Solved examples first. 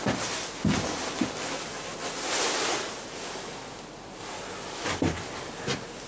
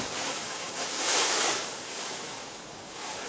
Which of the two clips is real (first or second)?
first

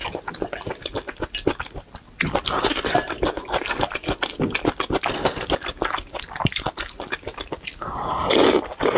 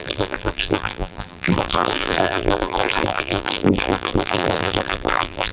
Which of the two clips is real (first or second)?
first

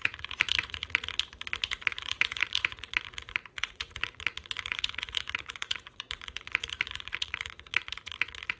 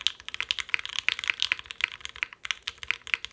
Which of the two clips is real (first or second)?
second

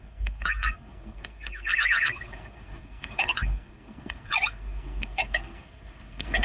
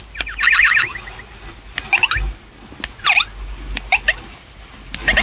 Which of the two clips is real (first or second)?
second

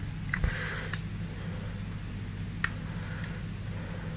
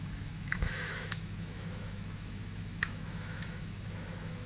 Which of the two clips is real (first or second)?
first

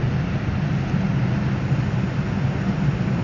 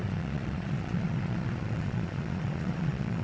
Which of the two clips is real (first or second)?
first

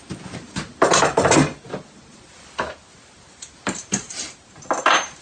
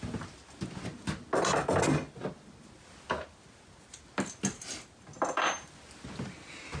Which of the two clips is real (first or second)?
second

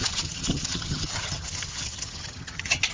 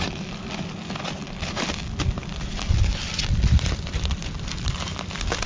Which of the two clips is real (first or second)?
second